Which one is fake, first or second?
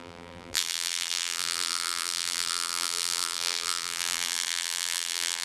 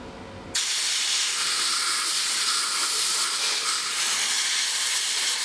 first